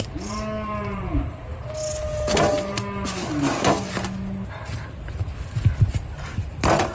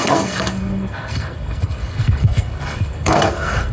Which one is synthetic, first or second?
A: second